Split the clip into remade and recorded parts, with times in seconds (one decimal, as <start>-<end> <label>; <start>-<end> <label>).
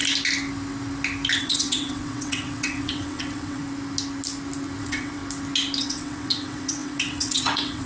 0.0-1.4 recorded; 1.4-3.6 remade; 3.6-4.8 recorded; 4.8-5.2 remade; 5.2-5.8 recorded; 5.8-7.9 remade